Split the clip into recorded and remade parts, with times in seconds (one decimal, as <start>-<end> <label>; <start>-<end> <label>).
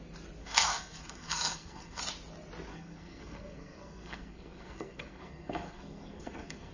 0.0-0.4 recorded; 0.4-2.0 remade; 2.0-2.7 recorded; 2.7-6.7 remade